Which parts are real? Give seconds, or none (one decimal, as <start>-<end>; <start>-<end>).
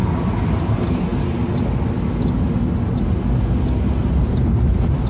1.1-4.2